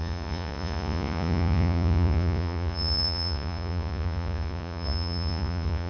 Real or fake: fake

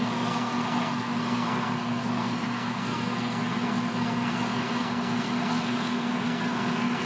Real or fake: fake